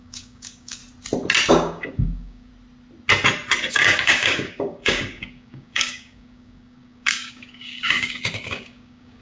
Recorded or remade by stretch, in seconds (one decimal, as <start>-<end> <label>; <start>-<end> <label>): 0.0-0.8 remade; 0.8-1.5 recorded; 1.5-2.5 remade; 2.5-3.7 recorded; 3.7-9.2 remade